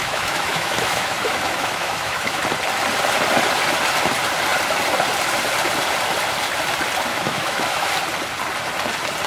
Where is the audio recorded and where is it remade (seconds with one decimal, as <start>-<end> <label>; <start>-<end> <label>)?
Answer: 0.0-2.4 remade; 2.4-7.1 recorded; 7.1-7.9 remade; 7.9-9.3 recorded